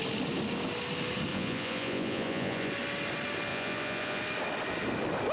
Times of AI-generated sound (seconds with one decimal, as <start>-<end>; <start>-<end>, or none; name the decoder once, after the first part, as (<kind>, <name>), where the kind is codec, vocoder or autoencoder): 1.3-2.7 (vocoder, Vocos); 3.5-4.2